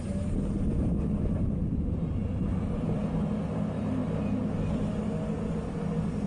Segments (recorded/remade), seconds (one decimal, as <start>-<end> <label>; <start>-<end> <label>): 0.0-6.3 recorded